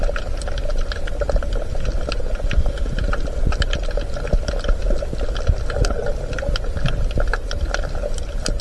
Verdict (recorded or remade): recorded